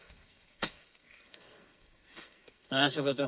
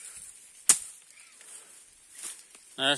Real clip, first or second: second